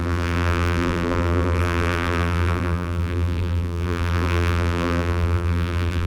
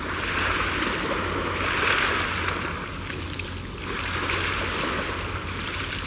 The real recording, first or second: second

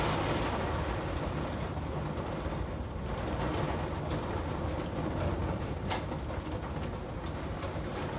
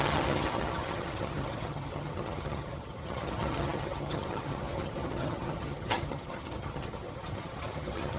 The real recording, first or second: first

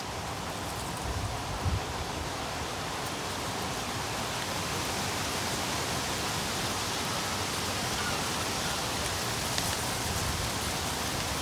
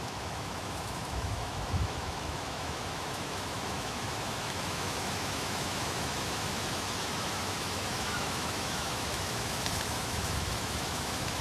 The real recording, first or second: first